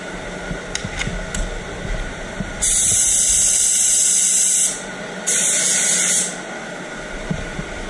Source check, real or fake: real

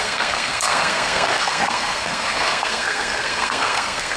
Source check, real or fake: fake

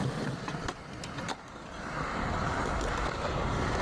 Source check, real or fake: real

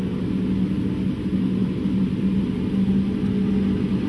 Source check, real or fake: real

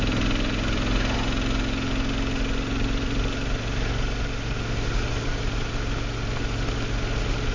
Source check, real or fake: real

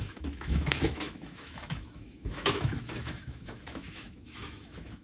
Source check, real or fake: fake